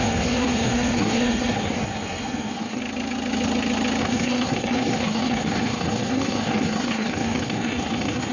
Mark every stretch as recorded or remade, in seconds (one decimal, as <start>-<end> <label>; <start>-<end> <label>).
0.0-2.8 remade; 2.8-4.0 recorded; 4.0-8.3 remade